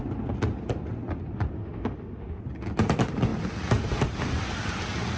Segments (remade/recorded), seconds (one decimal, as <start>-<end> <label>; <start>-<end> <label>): 0.0-1.6 recorded; 1.6-2.4 remade; 2.4-5.2 recorded